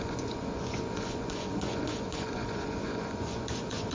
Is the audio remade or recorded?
remade